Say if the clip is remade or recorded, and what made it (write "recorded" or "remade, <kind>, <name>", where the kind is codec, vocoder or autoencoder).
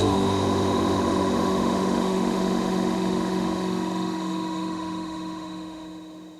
remade, autoencoder, DAC-VAE